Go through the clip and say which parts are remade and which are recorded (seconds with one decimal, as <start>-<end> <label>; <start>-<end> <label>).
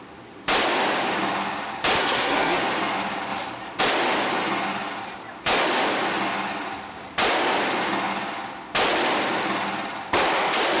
0.0-2.0 recorded; 2.0-2.6 remade; 2.6-10.8 recorded